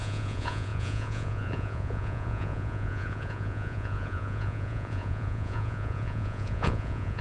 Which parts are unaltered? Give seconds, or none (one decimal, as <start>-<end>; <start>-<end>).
none